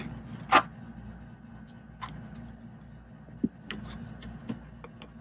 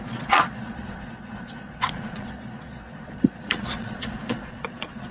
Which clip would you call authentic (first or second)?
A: first